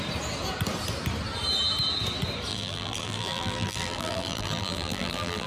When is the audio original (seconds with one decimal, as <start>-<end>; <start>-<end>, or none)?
0.0-2.5